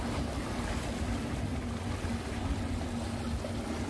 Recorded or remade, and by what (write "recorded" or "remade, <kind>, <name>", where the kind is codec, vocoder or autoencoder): recorded